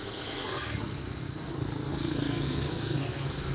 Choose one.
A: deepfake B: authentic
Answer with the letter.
A